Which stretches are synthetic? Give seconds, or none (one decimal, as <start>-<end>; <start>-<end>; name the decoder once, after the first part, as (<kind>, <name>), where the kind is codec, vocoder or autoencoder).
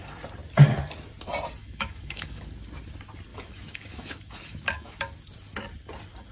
1.6-2.4 (autoencoder, DAC-VAE); 3.3-5.0